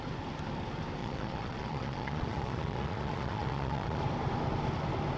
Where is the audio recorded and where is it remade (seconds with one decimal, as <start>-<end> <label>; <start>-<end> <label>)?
0.0-1.0 recorded; 1.0-4.0 remade; 4.0-5.2 recorded